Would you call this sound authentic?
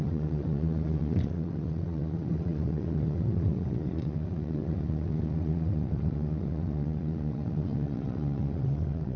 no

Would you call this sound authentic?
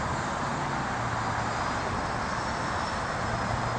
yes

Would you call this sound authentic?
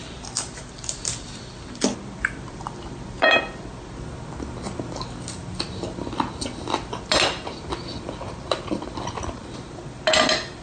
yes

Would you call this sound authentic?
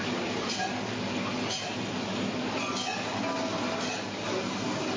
yes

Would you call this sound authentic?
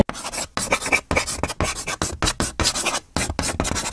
yes